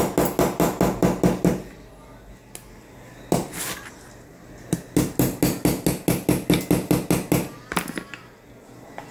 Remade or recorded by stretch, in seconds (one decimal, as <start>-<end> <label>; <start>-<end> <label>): 0.0-9.1 recorded